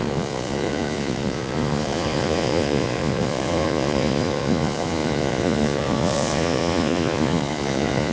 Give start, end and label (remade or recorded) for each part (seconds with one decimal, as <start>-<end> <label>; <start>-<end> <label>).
0.0-8.1 remade